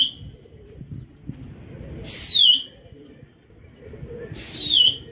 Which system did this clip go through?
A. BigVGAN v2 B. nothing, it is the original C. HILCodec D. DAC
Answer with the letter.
B